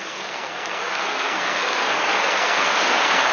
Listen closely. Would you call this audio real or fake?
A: fake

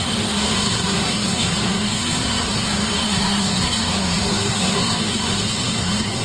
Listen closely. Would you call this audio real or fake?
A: fake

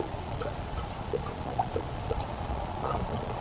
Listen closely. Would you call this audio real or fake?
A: fake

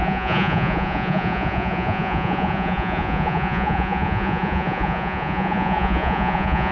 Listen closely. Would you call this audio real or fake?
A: fake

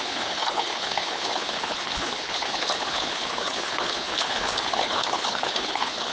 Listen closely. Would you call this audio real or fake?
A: fake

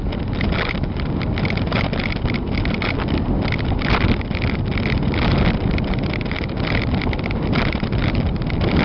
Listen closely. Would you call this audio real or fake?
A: real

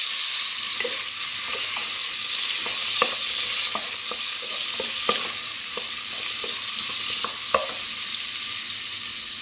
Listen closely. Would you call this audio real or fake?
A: real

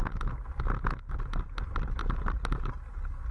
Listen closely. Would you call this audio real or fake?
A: real